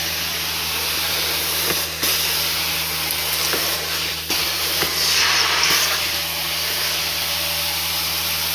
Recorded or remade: recorded